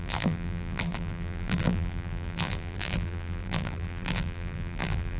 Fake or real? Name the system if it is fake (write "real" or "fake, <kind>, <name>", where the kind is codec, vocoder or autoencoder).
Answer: fake, vocoder, BigVGAN v2